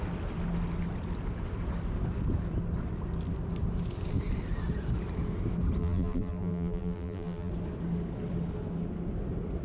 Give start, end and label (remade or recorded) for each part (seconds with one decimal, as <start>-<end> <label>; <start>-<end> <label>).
0.0-5.8 recorded; 5.8-7.5 remade; 7.5-9.6 recorded